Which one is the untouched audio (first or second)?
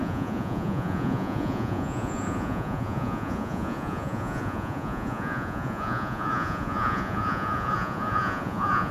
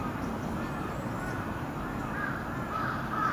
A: second